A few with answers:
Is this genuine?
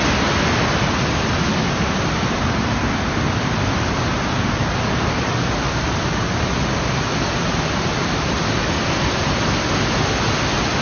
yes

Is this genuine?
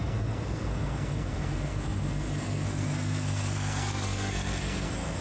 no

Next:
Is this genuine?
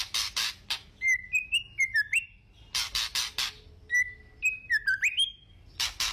yes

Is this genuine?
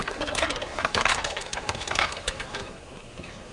no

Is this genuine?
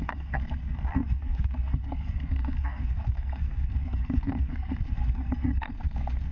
no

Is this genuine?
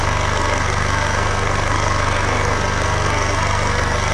no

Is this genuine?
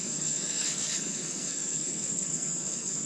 no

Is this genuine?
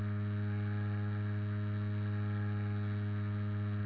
yes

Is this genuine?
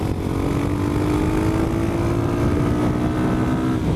yes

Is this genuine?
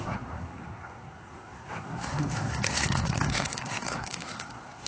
no